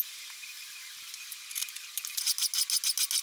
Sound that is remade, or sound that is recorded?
recorded